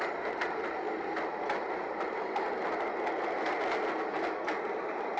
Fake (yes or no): no